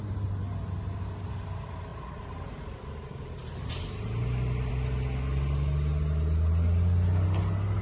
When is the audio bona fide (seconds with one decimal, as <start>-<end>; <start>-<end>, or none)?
0.0-1.9; 3.7-7.8